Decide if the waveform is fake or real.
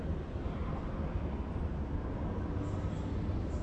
real